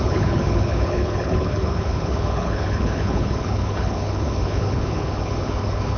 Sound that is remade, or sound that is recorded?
remade